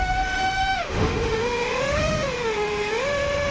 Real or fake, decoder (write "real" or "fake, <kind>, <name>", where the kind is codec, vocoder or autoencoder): fake, autoencoder, DAC-VAE